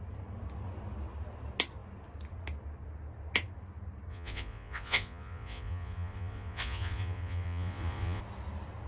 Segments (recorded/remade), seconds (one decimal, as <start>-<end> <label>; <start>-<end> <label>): 0.0-4.1 recorded; 4.1-8.2 remade; 8.2-8.9 recorded